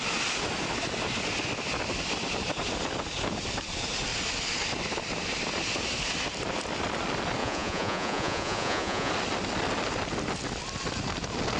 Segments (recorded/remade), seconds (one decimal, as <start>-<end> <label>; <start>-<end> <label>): 0.0-7.4 recorded; 7.4-9.1 remade; 9.1-11.6 recorded